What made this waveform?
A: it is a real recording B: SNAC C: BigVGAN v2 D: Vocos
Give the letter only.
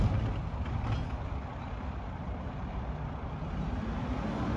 A